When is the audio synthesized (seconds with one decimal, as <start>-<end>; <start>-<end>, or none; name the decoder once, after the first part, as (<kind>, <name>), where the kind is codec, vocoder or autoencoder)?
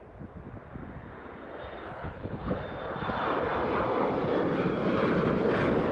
1.8-2.6 (codec, HILCodec)